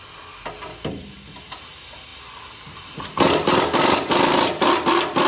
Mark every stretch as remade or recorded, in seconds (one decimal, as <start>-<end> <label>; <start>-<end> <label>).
0.0-5.3 recorded